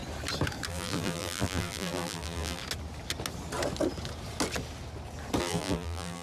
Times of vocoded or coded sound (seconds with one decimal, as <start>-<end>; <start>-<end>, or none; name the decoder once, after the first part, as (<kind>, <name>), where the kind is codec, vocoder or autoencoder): 0.7-2.6 (vocoder, BigVGAN v2); 5.4-6.2